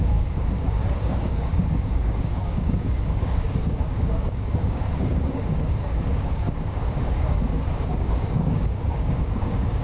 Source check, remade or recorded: remade